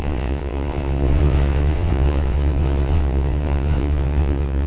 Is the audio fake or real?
fake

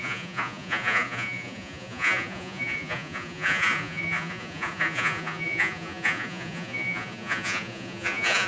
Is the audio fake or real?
fake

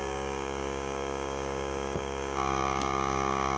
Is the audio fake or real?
fake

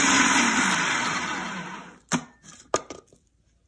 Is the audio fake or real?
real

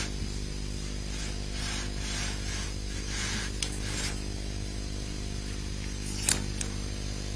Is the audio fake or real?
real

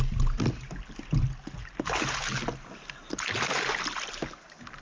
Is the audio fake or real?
real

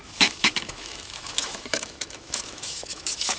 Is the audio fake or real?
fake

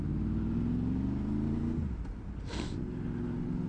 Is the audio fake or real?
real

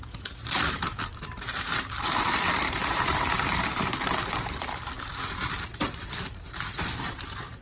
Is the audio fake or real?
fake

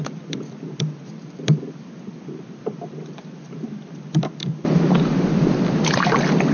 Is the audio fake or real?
fake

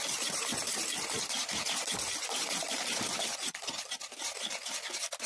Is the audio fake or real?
real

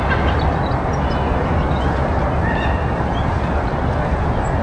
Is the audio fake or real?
real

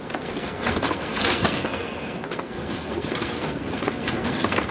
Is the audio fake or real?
fake